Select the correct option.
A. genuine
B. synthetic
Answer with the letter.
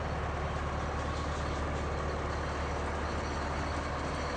A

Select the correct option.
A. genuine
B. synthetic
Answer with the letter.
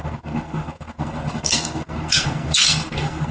B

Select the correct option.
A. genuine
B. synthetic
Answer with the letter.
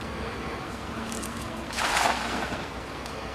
B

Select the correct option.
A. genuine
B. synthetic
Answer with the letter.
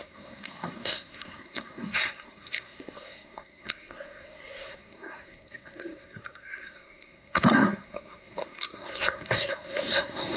B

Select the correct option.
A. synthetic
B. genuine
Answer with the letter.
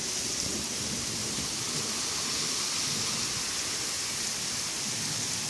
B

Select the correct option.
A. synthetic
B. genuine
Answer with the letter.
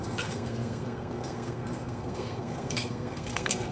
A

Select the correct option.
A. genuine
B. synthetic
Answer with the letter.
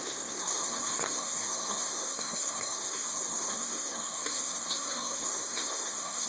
B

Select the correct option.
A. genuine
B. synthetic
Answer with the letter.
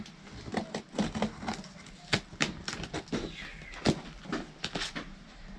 A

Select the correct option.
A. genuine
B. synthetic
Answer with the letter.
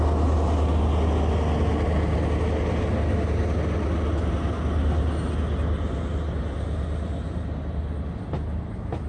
A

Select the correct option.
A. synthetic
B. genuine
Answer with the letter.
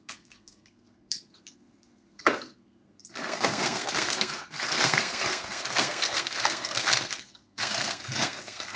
A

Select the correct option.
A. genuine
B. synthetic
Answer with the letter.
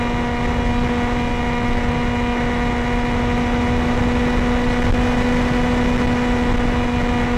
A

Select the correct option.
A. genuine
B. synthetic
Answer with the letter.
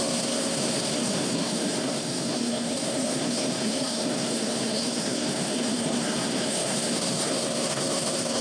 B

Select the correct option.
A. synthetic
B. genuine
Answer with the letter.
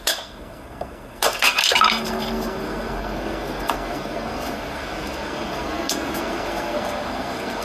A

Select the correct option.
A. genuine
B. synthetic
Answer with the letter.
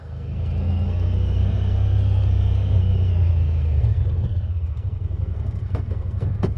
B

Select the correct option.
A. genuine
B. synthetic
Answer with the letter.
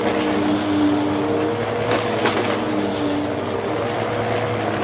A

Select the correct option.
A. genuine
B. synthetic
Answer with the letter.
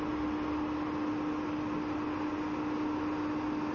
A